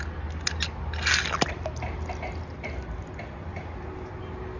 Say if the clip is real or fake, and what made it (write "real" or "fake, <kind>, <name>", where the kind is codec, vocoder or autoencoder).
real